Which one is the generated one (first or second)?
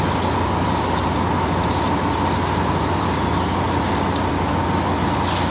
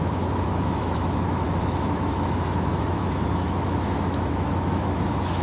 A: second